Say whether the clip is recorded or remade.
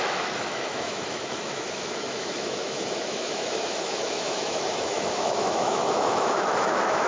remade